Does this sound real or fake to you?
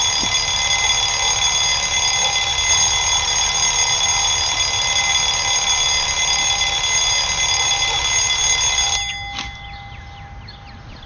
real